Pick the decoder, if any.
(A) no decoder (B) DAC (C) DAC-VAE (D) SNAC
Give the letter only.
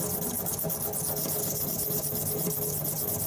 A